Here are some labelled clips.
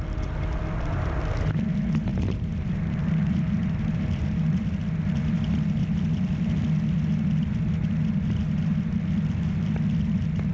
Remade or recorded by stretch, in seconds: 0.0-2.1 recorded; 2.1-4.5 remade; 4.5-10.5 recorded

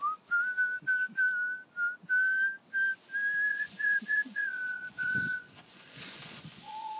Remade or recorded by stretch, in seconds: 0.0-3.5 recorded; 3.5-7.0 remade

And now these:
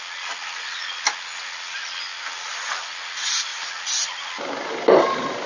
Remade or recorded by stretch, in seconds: 0.0-5.5 recorded